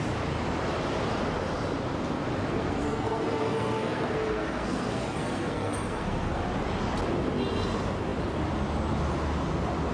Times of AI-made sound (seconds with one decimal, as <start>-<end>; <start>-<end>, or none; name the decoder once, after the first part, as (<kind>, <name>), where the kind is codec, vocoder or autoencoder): 2.5-6.4 (codec, SNAC)

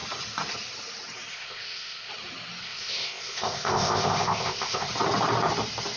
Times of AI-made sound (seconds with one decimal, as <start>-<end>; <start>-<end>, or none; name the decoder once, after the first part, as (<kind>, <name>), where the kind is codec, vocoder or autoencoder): 1.3-2.1 (codec, ZipCodec); 2.6-4.9

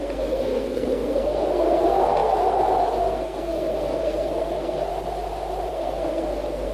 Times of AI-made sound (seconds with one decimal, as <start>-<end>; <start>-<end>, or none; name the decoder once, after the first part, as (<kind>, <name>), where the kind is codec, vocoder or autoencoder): 0.0-4.9 (codec, SNAC); 5.7-6.7

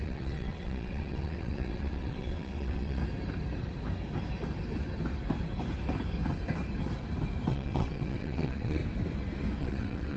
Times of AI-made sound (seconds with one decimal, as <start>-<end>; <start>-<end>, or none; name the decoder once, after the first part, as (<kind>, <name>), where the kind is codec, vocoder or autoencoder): 0.0-3.0 (vocoder, WaveNeXt); 7.5-8.8; 9.6-10.2

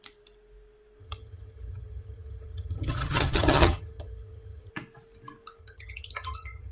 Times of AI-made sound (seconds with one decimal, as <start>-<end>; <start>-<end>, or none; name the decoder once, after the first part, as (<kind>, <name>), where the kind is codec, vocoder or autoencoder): 1.0-4.7 (vocoder, HiFi-GAN); 5.6-6.7

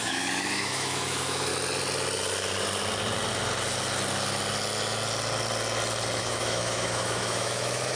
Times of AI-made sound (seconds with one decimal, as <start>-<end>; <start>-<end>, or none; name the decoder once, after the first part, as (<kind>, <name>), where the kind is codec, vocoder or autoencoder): 0.0-1.5 (autoencoder, DAC-VAE); 6.2-8.0

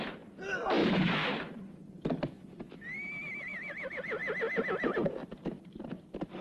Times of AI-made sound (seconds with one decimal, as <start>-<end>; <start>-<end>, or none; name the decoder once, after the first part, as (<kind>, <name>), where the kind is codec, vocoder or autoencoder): 0.0-4.2 (vocoder, BigVGAN v2); 5.3-6.4

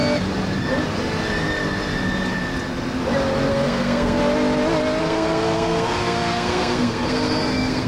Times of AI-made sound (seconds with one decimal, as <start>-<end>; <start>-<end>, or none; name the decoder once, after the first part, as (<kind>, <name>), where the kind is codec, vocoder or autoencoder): 3.5-4.2 (codec, SNAC); 5.0-7.9